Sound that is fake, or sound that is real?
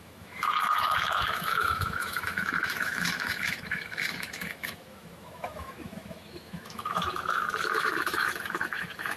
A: fake